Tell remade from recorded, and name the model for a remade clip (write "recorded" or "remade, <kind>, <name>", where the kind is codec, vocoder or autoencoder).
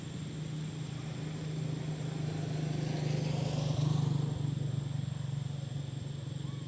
recorded